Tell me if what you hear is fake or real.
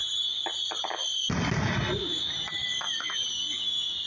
real